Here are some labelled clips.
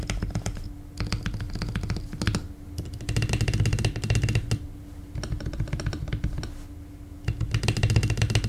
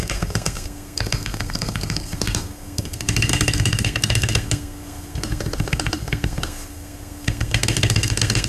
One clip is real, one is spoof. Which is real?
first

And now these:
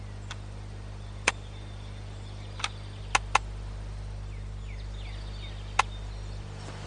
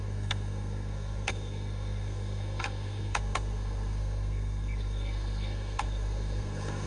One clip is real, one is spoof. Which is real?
first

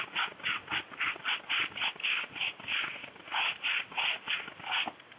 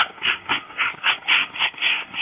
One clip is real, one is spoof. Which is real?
first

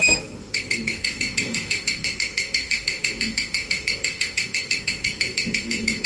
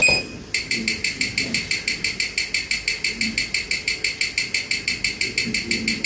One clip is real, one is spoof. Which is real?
second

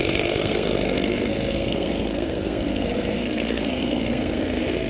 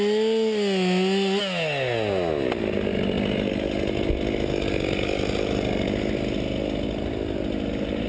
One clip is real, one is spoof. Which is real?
second